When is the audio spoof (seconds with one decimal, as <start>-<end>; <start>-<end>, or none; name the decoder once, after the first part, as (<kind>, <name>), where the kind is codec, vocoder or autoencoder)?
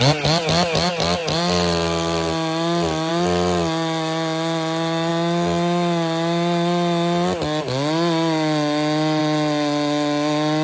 none